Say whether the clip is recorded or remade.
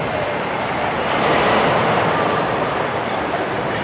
remade